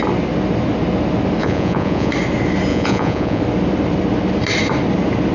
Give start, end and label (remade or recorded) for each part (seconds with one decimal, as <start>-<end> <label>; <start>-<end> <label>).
0.0-1.4 recorded; 1.4-2.1 remade; 2.1-2.7 recorded; 2.7-3.4 remade; 3.4-5.3 recorded